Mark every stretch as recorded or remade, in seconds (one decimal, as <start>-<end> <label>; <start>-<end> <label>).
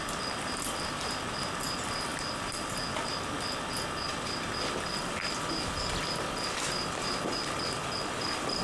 0.0-8.6 recorded